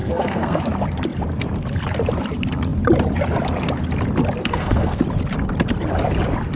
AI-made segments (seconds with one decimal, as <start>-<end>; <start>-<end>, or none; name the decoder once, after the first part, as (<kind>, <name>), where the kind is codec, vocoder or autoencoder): 0.0-0.6 (codec, SNAC); 4.4-5.0